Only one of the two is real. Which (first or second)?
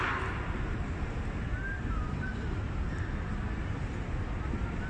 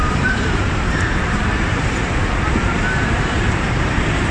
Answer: first